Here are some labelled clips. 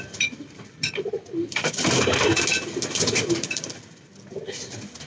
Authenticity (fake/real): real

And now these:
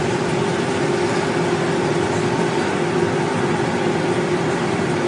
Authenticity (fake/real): real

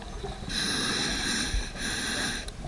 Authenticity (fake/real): real